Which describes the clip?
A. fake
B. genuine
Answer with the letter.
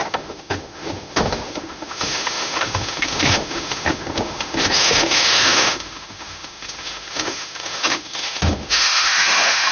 A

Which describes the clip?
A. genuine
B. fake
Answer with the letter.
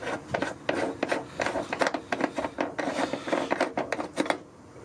A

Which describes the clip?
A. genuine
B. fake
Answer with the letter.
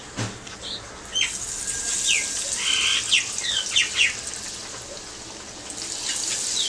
A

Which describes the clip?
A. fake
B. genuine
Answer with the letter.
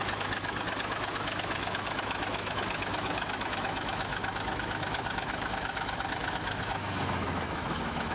A